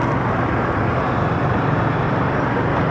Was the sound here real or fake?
real